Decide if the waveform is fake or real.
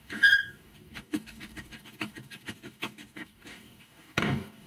fake